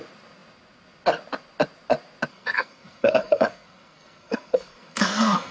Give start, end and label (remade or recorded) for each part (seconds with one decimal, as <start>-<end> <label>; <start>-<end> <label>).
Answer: 0.0-2.3 recorded; 2.3-5.5 remade